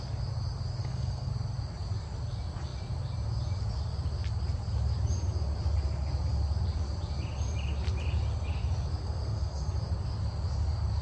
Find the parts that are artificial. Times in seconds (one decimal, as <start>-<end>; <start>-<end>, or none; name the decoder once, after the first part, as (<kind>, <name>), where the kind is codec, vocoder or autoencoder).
0.8-1.3 (codec, SNAC); 9.0-9.6